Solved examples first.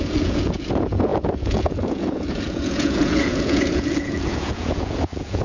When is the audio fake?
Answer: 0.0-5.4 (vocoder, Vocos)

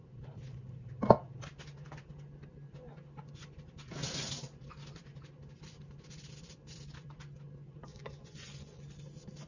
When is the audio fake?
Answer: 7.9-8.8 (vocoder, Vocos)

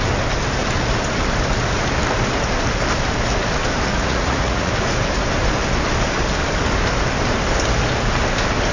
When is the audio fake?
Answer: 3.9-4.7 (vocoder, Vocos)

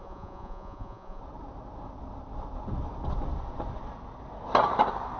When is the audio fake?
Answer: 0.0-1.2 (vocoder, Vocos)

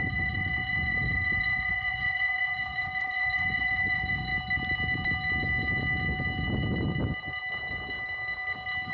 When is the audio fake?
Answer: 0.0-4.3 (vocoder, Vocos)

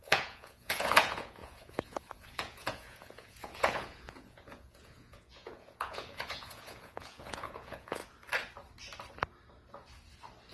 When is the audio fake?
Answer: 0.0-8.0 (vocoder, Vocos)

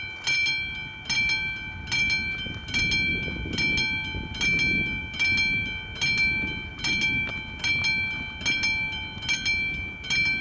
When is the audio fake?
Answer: none